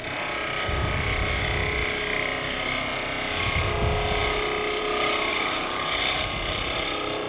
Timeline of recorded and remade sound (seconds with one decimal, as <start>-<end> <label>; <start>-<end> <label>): 0.0-5.3 recorded; 5.3-6.0 remade; 6.0-7.3 recorded